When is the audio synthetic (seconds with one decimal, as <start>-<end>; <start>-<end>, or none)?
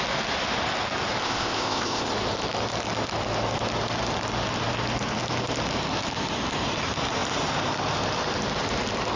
1.2-2.1